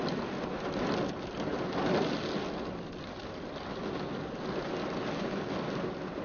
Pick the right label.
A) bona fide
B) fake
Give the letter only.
A